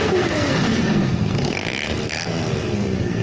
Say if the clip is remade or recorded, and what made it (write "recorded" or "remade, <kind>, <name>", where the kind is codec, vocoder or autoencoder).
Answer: remade, codec, SNAC